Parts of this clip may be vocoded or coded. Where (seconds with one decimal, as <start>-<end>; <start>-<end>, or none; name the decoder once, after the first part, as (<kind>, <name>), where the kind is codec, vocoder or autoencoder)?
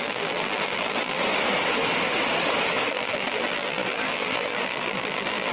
0.0-1.2 (vocoder, BigVGAN v2); 2.9-5.5